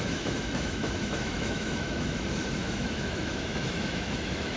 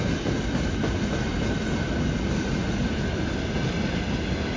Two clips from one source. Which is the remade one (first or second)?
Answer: first